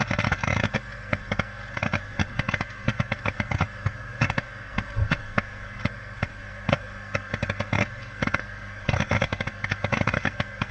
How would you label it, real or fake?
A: fake